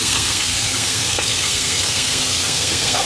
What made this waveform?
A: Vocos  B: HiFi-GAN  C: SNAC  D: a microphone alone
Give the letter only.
C